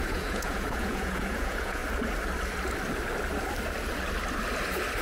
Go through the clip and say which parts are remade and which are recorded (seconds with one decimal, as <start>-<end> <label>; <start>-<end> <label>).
0.0-1.8 remade; 1.8-5.0 recorded